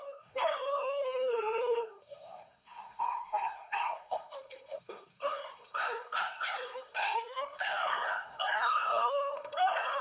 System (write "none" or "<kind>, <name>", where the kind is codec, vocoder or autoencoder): codec, SNAC